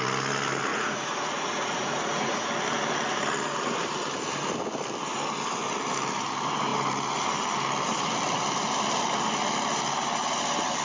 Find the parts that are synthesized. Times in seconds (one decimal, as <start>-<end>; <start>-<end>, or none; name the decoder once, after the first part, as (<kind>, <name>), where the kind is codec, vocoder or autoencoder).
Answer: 0.7-2.5 (vocoder, Vocos)